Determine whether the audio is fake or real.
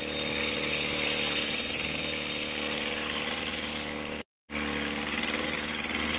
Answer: real